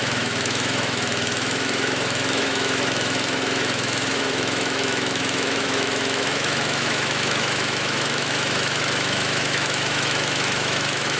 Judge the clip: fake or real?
fake